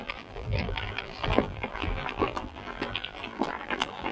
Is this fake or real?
fake